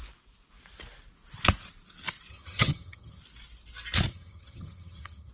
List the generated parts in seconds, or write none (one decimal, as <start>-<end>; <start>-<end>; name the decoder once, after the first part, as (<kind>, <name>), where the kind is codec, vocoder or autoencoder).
2.3-3.2 (vocoder, HiFi-GAN); 4.1-5.3